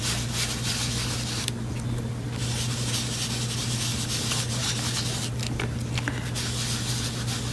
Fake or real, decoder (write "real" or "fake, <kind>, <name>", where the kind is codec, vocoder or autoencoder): real